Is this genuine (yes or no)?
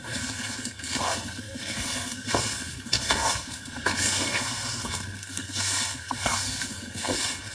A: no